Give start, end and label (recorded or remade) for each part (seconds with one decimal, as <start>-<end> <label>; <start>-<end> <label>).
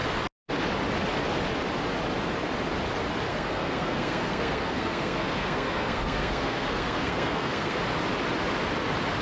0.0-3.3 recorded; 3.3-7.8 remade; 7.8-9.2 recorded